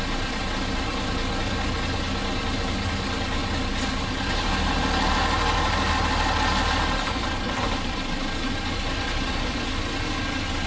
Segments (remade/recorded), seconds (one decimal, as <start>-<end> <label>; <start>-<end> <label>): 0.0-10.7 recorded